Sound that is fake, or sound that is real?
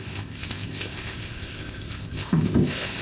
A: fake